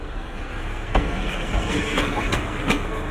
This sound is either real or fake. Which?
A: fake